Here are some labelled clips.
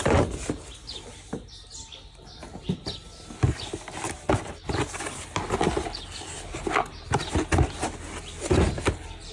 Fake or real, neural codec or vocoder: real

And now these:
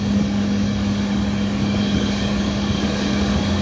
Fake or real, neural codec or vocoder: fake, codec, DAC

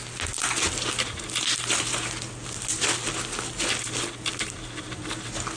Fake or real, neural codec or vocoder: real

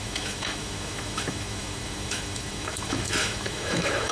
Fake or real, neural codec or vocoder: fake, autoencoder, DAC-VAE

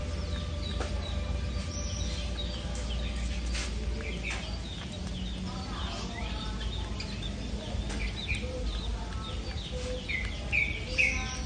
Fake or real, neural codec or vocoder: real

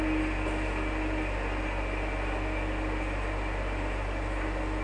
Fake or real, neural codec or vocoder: real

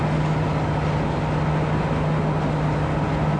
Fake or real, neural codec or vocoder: real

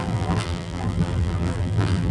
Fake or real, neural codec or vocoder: fake, vocoder, BigVGAN v2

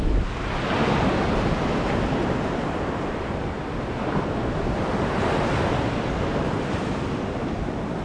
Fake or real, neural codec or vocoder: real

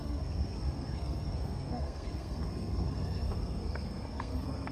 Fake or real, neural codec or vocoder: fake, codec, SNAC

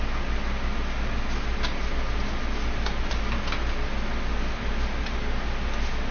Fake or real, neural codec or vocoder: real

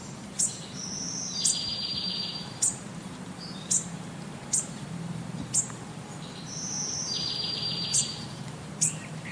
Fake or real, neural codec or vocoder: fake, vocoder, BigVGAN v2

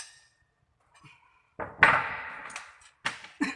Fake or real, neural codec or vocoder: real